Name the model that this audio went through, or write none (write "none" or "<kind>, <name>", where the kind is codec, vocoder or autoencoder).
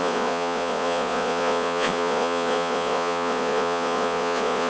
vocoder, Vocos